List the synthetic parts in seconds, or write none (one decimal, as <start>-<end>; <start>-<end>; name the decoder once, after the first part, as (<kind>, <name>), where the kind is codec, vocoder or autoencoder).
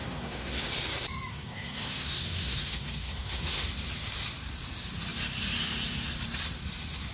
0.0-0.7 (codec, SNAC); 1.3-3.7